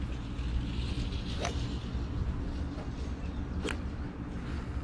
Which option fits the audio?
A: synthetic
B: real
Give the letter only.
B